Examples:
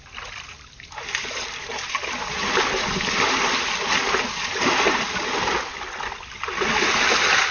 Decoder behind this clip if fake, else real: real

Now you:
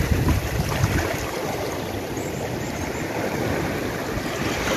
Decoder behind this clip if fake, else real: real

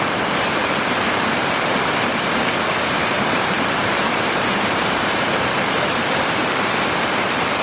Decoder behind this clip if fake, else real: fake, vocoder, BigVGAN v2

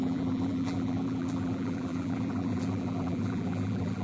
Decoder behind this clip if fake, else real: fake, vocoder, BigVGAN v2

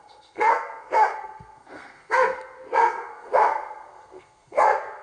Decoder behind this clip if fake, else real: fake, codec, SNAC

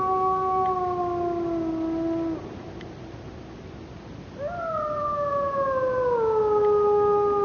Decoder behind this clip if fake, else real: real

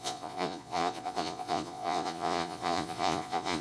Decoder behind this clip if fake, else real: fake, vocoder, Vocos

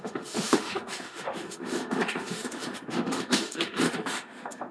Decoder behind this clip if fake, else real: fake, autoencoder, DAC-VAE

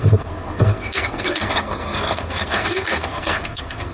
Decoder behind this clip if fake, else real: fake, codec, SNAC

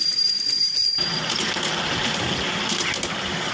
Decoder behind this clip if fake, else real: real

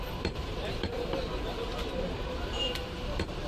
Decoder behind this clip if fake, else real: fake, vocoder, BigVGAN v2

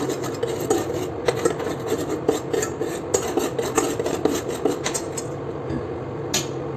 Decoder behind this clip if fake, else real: real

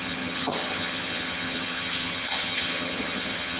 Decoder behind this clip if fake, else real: fake, vocoder, HiFi-GAN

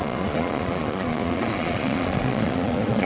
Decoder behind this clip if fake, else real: fake, vocoder, Vocos